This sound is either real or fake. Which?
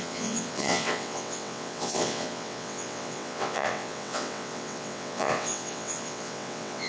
fake